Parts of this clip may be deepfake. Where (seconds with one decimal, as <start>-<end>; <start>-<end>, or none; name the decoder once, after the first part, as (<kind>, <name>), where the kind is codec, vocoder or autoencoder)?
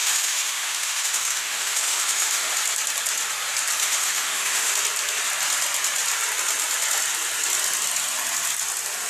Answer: 0.0-2.5 (autoencoder, DAC-VAE); 3.8-4.7